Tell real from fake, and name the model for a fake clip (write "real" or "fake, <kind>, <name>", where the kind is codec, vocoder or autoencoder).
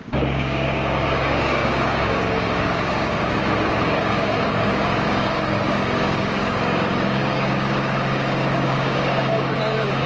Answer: fake, codec, DAC